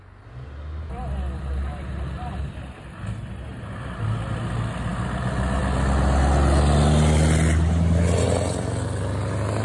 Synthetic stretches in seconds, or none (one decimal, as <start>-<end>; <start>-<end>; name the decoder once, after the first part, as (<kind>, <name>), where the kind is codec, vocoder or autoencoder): none